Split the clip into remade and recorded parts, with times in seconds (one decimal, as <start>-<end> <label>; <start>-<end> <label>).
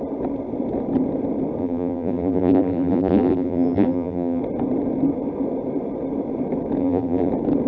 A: 0.0-1.6 recorded; 1.6-4.4 remade; 4.4-6.8 recorded; 6.8-7.3 remade; 7.3-7.7 recorded